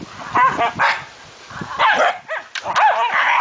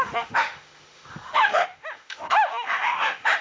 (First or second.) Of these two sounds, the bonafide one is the first